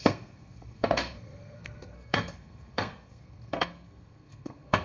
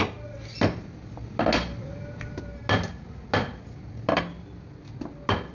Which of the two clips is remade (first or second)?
first